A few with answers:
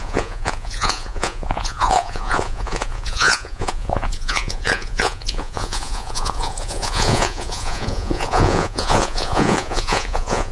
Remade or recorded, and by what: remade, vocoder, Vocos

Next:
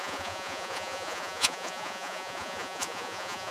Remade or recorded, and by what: remade, vocoder, Vocos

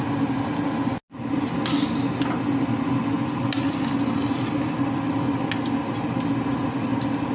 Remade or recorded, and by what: recorded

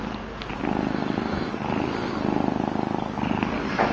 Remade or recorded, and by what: recorded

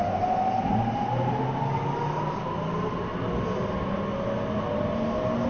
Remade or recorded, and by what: recorded